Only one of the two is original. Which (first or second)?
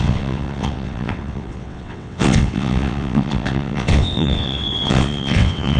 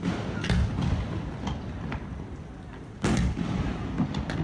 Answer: second